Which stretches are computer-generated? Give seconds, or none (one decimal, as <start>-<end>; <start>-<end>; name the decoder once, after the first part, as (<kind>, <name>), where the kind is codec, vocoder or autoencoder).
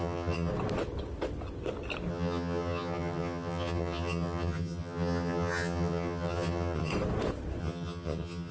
0.0-0.5 (vocoder, HiFi-GAN); 2.1-6.9; 7.6-8.5